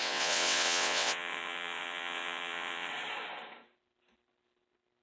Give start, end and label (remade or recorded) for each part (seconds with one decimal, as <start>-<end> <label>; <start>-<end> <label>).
0.0-2.9 remade; 2.9-5.0 recorded